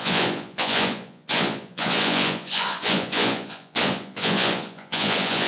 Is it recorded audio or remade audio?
remade